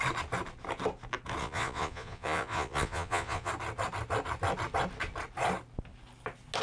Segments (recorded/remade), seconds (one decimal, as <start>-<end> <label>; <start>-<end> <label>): 0.0-1.4 recorded; 1.4-3.5 remade; 3.5-6.6 recorded